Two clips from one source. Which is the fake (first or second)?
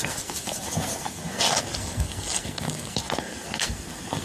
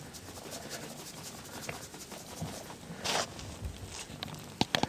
first